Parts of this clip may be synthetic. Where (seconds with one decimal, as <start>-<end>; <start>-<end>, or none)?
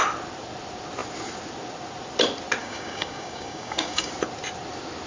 2.6-4.1